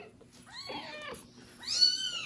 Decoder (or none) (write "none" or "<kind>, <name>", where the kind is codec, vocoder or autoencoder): none